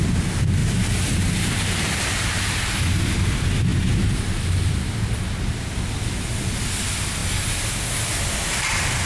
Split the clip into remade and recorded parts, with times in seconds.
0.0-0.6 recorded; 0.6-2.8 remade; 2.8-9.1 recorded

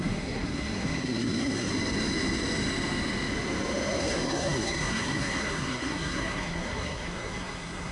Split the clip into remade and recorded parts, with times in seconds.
0.0-1.7 remade; 1.7-4.0 recorded; 4.0-7.9 remade

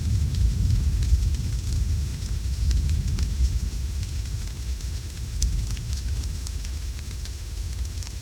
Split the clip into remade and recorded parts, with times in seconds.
0.0-8.2 remade

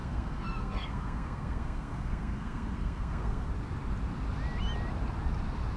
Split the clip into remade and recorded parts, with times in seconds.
0.0-3.5 remade; 3.5-5.8 recorded

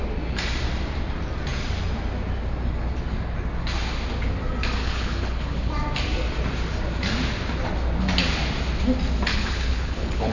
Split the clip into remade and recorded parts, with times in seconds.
0.0-4.8 recorded; 4.8-5.7 remade; 5.7-9.3 recorded; 9.3-10.3 remade

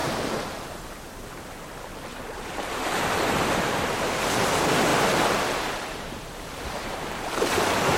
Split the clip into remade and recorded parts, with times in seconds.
0.0-1.5 remade; 1.5-2.1 recorded; 2.1-3.4 remade; 3.4-4.9 recorded; 4.9-7.5 remade; 7.5-8.0 recorded